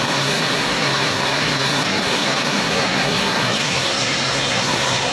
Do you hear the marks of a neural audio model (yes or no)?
yes